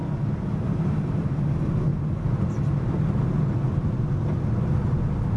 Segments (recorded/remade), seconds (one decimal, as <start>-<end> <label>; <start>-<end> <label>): 0.0-5.4 recorded